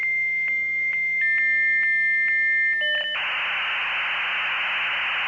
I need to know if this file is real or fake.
real